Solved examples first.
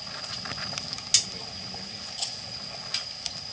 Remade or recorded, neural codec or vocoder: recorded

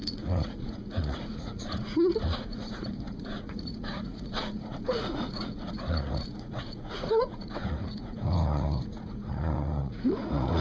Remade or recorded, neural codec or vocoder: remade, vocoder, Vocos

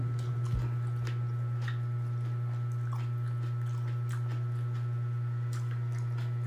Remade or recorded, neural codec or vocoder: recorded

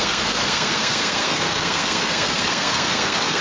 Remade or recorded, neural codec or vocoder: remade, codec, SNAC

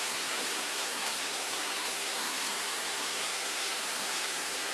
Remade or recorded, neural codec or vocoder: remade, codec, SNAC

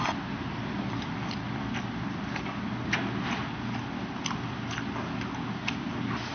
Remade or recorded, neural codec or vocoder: recorded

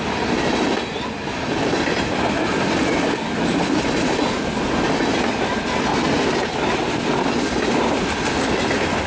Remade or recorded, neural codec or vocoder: recorded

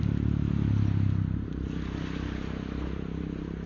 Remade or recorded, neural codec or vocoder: recorded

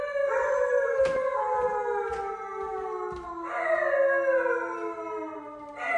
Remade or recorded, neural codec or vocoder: recorded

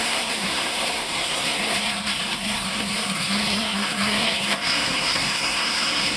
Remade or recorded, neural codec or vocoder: remade, codec, SNAC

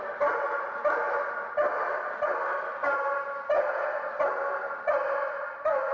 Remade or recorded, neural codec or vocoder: recorded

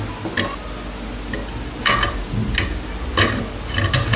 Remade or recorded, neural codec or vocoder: recorded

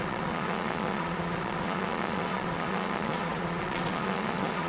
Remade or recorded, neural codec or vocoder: remade, vocoder, Vocos